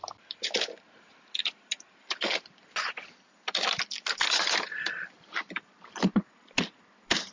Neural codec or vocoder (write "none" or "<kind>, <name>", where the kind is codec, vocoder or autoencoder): none